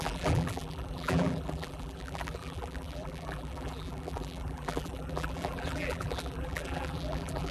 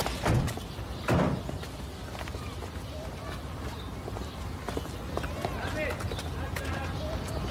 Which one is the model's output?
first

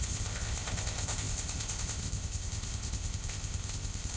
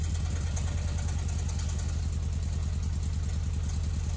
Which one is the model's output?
first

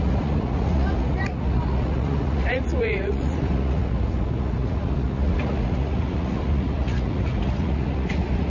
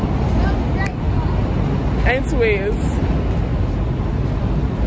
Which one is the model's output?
first